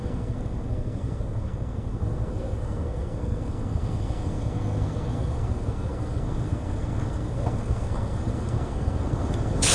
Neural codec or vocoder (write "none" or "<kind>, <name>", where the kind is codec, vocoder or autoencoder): codec, SNAC